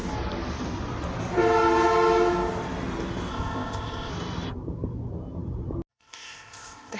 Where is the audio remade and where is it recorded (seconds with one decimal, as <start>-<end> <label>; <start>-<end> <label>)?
0.0-3.3 recorded; 3.3-4.1 remade; 4.1-5.9 recorded; 5.9-7.0 remade